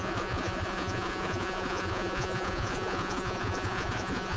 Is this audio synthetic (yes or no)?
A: yes